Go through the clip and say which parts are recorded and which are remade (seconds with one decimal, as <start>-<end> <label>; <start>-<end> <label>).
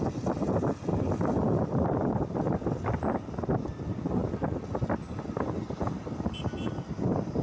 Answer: 0.0-7.4 recorded